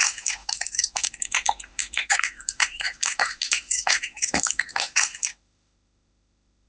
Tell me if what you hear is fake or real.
fake